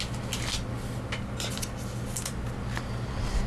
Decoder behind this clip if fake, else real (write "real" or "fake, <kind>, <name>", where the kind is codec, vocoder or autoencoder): real